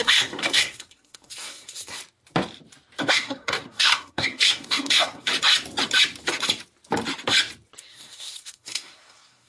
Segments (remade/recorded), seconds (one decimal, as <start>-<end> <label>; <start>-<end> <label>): 0.0-2.0 remade; 2.0-3.1 recorded; 3.1-5.3 remade; 5.3-7.8 recorded; 7.8-9.5 remade